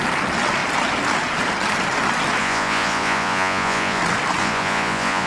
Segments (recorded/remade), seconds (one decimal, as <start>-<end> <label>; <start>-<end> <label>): 0.0-2.4 recorded; 2.4-4.0 remade; 4.0-4.4 recorded; 4.4-5.3 remade